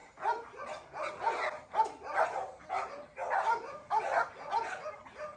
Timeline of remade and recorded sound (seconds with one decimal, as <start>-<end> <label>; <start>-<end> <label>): 0.0-5.4 recorded